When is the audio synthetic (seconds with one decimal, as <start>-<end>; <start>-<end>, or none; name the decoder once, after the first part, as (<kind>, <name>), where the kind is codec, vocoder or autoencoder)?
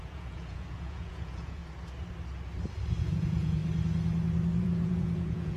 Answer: 0.0-1.6 (vocoder, Vocos); 3.0-3.6; 4.6-5.6